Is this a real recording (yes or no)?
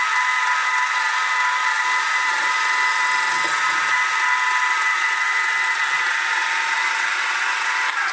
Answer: yes